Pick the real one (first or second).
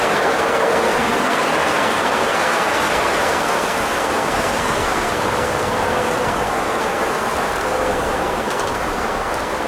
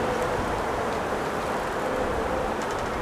second